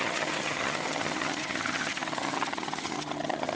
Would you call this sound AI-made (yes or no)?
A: yes